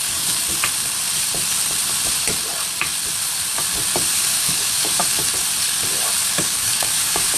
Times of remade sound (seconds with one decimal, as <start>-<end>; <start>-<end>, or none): 0.0-0.4; 4.2-5.0; 6.4-7.4

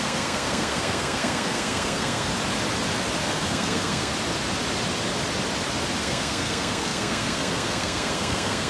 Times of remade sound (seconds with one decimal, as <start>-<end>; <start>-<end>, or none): 0.0-2.3; 3.3-4.1; 6.0-8.7

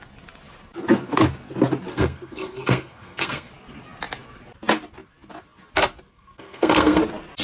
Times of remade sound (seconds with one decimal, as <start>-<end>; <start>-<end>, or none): 1.9-3.5; 6.1-7.0

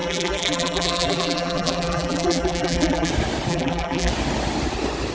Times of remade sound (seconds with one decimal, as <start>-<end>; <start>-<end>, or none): 0.0-3.1; 3.5-4.1

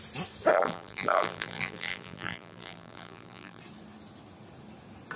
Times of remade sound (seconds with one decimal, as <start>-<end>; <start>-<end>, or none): 0.5-3.6

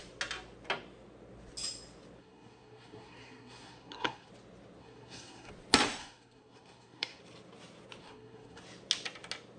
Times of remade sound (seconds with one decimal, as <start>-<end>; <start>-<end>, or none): 2.2-4.3; 4.8-5.5; 6.0-7.2; 8.0-8.6